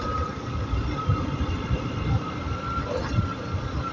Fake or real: real